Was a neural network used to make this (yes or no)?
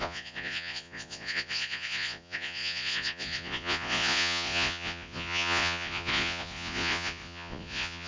yes